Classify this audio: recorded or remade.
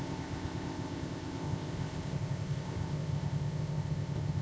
remade